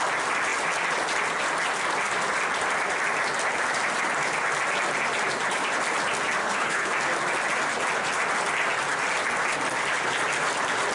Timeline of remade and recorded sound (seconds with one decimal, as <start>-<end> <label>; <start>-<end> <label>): 0.0-6.4 recorded; 6.4-6.9 remade; 6.9-10.9 recorded

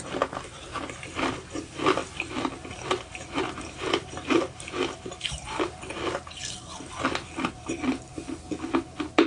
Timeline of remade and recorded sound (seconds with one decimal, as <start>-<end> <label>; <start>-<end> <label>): 0.0-9.3 recorded